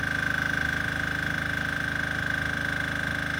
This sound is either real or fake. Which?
real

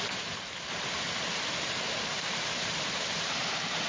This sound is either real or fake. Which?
fake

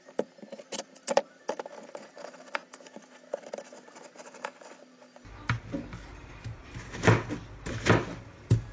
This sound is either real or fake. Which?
real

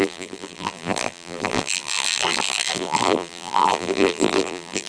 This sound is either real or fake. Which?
fake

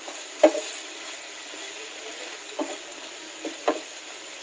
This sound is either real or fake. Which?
real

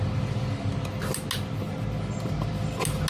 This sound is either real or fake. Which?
real